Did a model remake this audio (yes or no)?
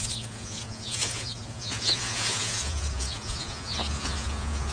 yes